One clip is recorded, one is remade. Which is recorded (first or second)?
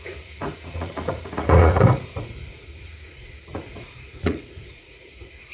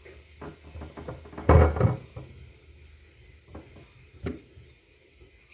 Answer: second